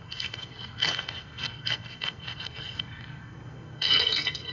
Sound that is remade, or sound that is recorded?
remade